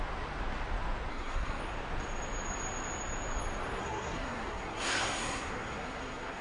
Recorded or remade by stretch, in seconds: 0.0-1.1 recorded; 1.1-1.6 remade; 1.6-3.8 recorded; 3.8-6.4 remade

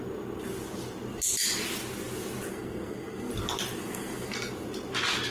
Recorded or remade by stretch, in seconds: 0.0-2.5 recorded; 2.5-3.3 remade; 3.3-3.8 recorded; 3.8-4.5 remade; 4.5-5.3 recorded

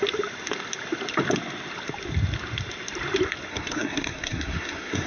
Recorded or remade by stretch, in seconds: 0.0-3.5 recorded; 3.5-5.1 remade

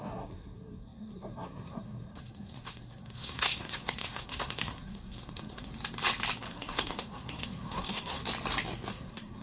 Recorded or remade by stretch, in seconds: 0.0-5.7 remade; 5.7-6.5 recorded; 6.5-8.2 remade; 8.2-8.9 recorded; 8.9-9.4 remade